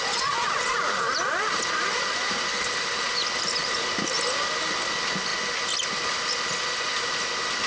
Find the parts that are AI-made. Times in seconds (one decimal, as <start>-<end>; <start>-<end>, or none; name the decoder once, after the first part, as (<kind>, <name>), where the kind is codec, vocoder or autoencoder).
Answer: none